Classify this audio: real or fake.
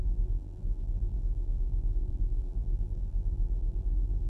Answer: fake